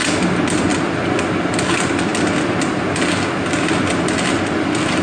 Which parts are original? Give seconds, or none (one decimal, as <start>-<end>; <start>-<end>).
0.0-5.0